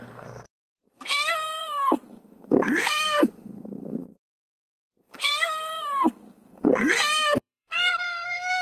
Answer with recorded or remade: remade